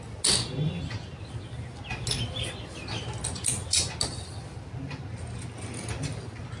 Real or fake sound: real